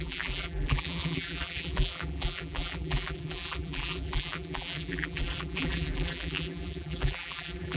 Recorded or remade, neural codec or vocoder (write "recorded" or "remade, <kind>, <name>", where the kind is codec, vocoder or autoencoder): remade, vocoder, BigVGAN v2